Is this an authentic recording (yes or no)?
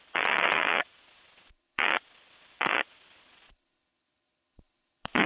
no